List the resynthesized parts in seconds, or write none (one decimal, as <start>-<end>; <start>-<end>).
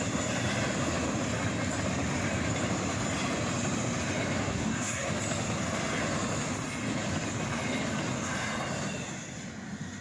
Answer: 4.4-5.1